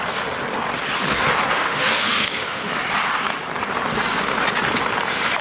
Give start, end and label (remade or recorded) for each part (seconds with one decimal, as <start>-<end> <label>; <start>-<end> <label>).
0.0-1.5 recorded; 1.5-2.7 remade; 2.7-5.4 recorded